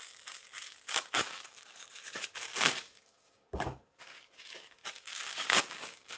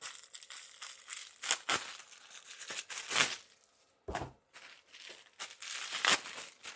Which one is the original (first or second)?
second